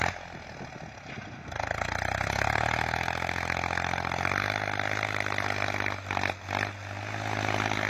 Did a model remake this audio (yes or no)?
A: no